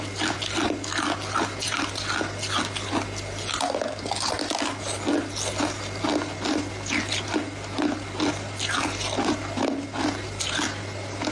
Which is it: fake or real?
real